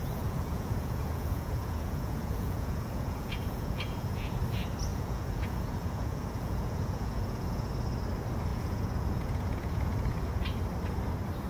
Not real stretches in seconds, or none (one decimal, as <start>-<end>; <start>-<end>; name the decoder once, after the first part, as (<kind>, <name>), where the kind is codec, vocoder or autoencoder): 0.0-4.4 (vocoder, Vocos); 4.9-7.7; 8.5-10.4